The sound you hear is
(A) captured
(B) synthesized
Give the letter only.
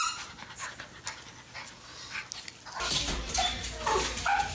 A